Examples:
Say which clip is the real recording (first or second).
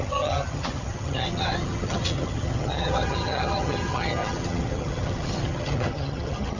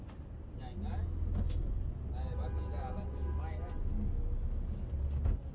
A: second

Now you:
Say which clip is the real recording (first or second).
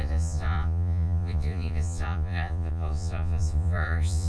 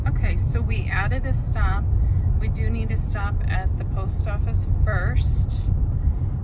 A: second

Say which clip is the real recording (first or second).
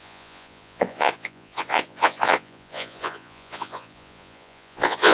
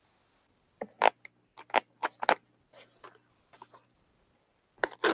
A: second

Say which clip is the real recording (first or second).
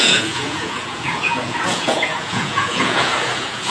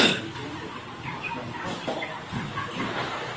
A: second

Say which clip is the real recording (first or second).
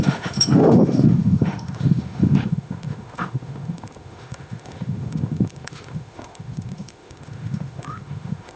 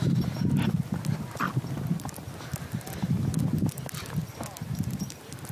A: second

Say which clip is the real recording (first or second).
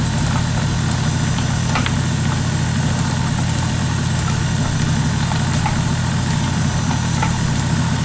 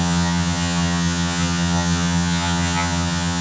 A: first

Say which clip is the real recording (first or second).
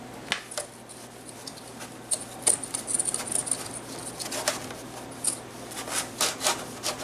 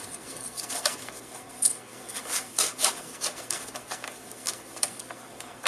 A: first